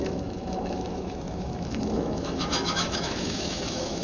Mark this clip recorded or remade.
remade